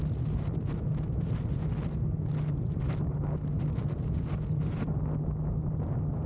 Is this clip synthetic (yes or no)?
no